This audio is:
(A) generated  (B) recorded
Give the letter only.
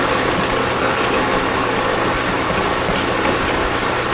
B